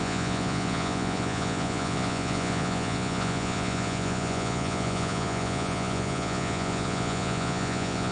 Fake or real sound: fake